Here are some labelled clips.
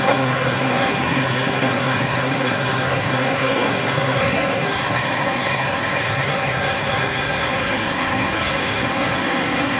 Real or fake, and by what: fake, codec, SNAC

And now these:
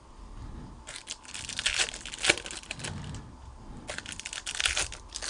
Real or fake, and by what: real